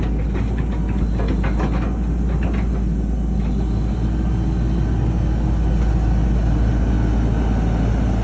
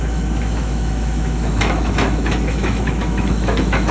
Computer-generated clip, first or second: second